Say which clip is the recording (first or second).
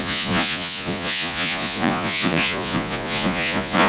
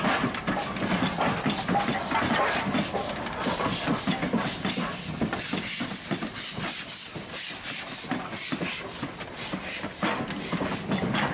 second